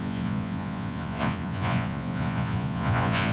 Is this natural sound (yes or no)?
no